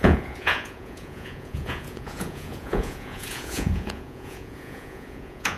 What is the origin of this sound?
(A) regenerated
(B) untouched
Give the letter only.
A